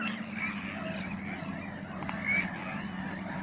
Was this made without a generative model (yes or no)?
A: yes